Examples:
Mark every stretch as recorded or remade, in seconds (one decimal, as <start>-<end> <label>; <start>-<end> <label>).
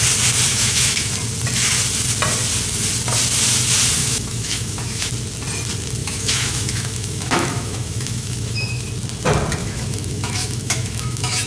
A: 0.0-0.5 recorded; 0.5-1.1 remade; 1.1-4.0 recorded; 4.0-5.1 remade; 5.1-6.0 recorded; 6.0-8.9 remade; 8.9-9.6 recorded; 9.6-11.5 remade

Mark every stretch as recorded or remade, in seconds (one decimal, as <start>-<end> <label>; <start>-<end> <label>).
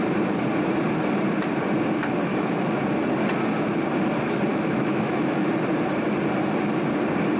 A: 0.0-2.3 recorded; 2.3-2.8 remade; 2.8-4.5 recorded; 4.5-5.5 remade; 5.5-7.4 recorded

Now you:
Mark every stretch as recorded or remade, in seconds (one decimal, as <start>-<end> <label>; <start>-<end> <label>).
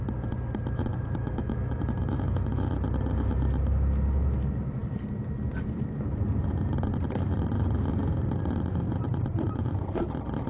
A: 0.0-0.9 recorded; 0.9-2.7 remade; 2.7-10.5 recorded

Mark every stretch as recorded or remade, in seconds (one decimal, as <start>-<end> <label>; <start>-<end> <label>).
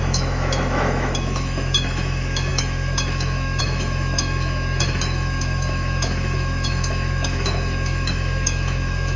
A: 0.0-9.2 remade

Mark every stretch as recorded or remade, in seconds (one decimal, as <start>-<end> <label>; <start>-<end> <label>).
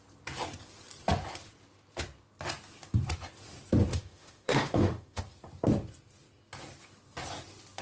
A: 0.0-3.9 recorded; 3.9-5.2 remade; 5.2-7.8 recorded